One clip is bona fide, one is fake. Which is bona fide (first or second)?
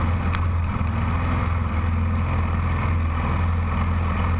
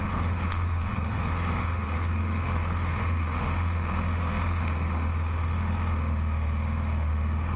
first